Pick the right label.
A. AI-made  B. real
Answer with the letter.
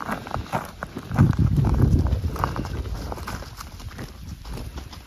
B